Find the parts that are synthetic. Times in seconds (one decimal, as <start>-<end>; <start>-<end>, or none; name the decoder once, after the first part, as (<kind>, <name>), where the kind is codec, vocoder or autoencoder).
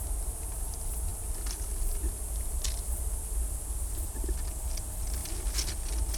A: none